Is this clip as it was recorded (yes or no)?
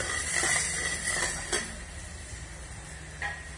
yes